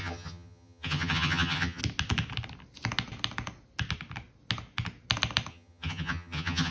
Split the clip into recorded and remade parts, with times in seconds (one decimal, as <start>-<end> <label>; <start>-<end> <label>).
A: 0.0-1.8 remade; 1.8-5.5 recorded; 5.5-6.7 remade